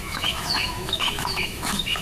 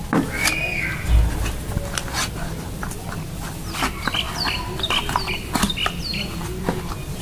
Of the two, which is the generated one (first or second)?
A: first